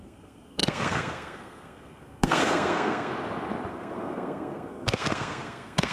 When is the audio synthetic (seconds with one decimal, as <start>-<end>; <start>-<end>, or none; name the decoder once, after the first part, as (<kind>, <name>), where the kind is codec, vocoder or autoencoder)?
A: 0.0-3.1 (codec, SNAC); 3.7-5.9